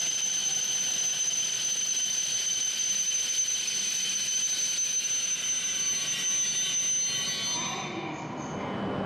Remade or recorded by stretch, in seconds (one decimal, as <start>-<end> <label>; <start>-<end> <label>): 0.0-0.4 recorded; 0.4-4.4 remade; 4.4-9.1 recorded